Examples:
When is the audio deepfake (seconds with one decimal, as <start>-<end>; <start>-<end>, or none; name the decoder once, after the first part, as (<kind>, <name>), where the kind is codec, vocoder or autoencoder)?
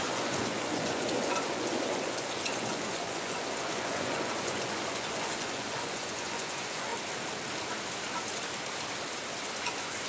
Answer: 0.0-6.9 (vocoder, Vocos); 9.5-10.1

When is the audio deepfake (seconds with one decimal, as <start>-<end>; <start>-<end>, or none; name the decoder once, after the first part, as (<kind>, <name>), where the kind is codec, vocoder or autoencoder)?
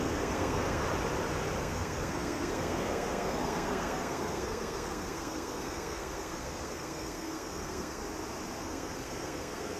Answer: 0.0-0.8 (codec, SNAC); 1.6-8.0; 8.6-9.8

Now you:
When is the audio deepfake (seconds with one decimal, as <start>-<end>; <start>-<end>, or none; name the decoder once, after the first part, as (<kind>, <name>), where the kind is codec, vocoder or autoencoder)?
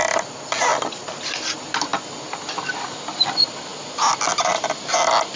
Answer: none